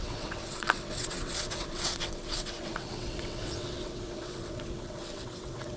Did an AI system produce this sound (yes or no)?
yes